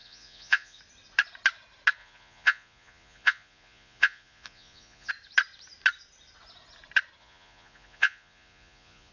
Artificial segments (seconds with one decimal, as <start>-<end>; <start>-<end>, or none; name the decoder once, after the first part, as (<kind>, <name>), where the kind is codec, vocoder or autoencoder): 0.0-0.8 (vocoder, Vocos); 2.0-5.1; 7.2-9.1